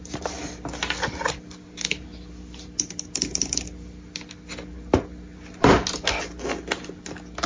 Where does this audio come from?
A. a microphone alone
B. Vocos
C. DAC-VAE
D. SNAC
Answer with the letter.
A